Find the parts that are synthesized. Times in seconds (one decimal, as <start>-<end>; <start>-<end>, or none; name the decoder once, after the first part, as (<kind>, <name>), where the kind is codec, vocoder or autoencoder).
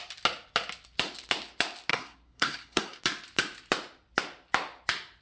1.9-3.0 (codec, SNAC)